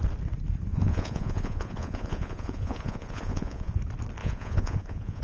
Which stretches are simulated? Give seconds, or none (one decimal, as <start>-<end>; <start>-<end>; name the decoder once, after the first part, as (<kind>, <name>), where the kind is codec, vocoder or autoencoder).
0.7-3.8 (vocoder, Vocos); 4.2-5.2